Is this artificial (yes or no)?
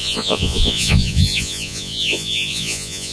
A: yes